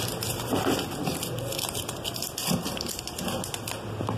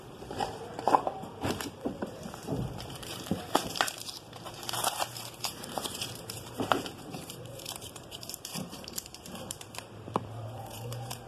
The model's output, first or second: second